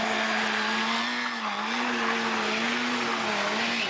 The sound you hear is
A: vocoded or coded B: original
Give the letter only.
B